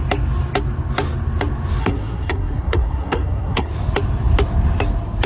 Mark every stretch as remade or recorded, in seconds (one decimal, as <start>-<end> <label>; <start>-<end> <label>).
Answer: 0.0-1.8 recorded; 1.8-3.7 remade; 3.7-5.3 recorded